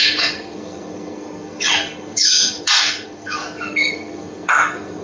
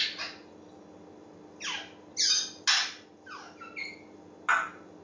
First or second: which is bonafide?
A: second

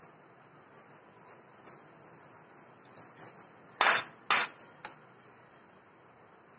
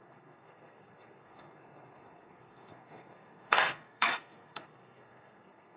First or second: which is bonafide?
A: first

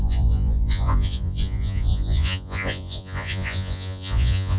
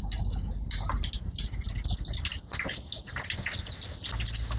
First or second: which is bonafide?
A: second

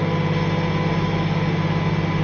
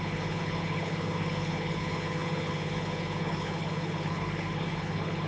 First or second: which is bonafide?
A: first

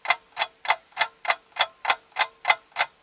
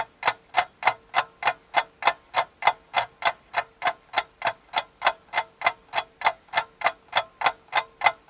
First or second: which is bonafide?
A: second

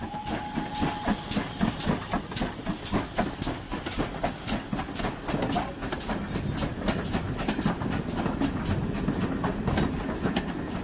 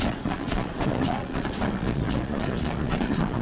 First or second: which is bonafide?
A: first